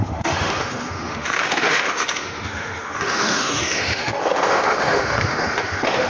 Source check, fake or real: fake